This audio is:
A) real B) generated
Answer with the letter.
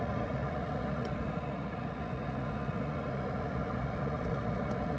B